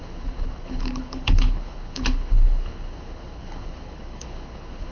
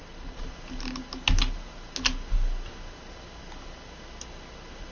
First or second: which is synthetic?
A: first